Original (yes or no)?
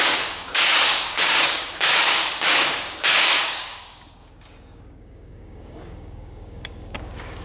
no